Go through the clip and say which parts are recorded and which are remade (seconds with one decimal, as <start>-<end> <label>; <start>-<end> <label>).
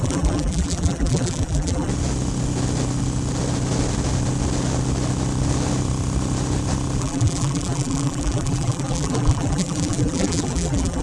0.0-1.9 remade; 1.9-7.0 recorded; 7.0-11.0 remade